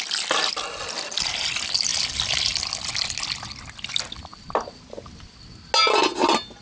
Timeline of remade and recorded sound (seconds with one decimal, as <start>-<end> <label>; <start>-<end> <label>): 0.0-6.6 recorded